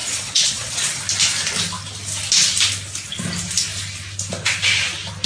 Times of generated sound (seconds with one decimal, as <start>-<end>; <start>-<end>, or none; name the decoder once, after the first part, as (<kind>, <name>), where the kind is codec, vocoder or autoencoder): 0.0-1.0 (vocoder, Vocos)